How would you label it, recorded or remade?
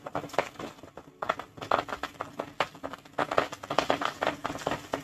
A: recorded